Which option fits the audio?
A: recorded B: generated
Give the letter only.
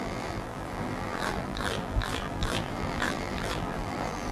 B